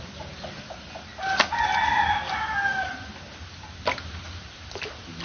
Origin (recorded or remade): recorded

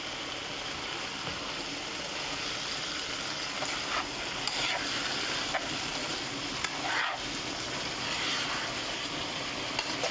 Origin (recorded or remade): recorded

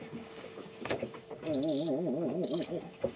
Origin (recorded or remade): remade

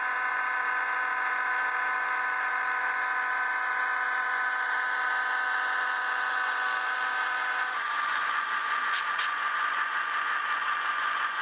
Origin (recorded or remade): remade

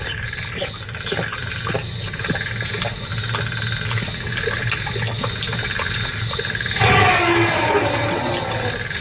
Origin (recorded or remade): recorded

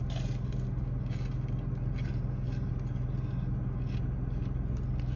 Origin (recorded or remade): recorded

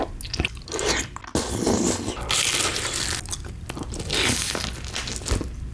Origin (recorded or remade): recorded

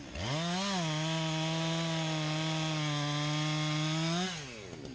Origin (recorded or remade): recorded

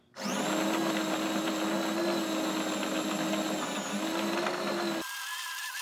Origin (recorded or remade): recorded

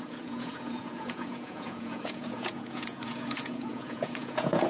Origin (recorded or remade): remade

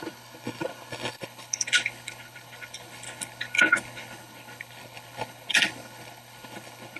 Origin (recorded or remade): remade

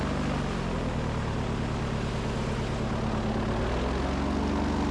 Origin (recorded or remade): recorded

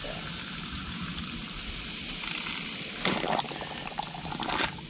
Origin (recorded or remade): recorded